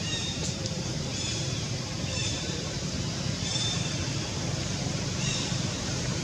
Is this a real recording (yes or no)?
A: no